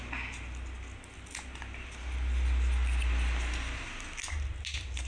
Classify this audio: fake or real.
real